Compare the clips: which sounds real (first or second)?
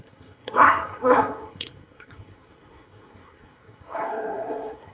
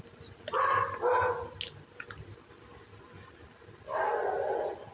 second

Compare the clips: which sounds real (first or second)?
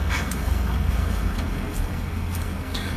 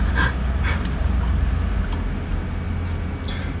second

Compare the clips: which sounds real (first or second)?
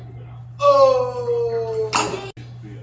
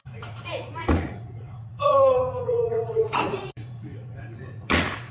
first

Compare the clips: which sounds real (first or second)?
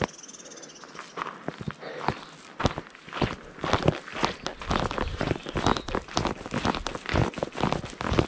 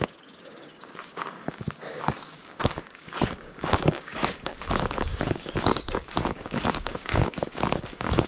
first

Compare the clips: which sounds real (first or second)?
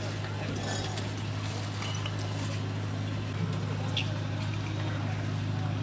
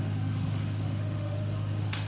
first